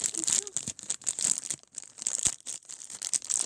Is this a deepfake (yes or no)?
no